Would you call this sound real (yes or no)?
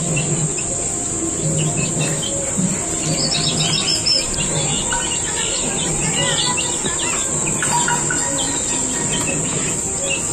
yes